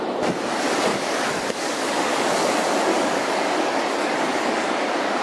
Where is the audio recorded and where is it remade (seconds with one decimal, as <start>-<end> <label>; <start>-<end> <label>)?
0.0-0.9 recorded; 0.9-2.5 remade; 2.5-2.9 recorded; 2.9-4.7 remade; 4.7-5.2 recorded

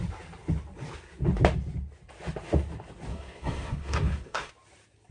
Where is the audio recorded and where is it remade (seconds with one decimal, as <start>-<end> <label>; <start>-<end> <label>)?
0.0-3.1 recorded; 3.1-4.5 remade; 4.5-5.1 recorded

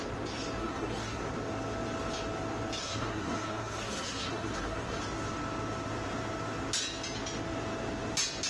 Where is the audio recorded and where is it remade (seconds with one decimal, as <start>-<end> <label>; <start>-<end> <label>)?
0.0-0.6 recorded; 0.6-1.2 remade; 1.2-2.8 recorded; 2.8-5.0 remade; 5.0-8.5 recorded

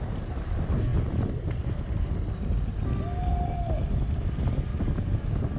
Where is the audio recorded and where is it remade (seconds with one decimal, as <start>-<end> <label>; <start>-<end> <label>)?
0.0-5.6 recorded

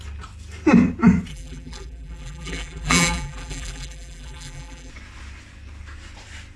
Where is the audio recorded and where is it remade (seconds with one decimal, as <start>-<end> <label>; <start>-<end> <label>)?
0.0-1.3 recorded; 1.3-4.9 remade; 4.9-6.6 recorded